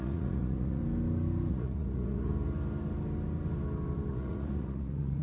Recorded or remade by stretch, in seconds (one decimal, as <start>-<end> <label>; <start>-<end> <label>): 0.0-0.8 remade; 0.8-1.5 recorded; 1.5-2.3 remade; 2.3-4.1 recorded; 4.1-5.2 remade